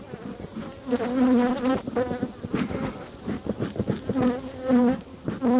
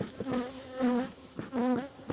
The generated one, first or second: second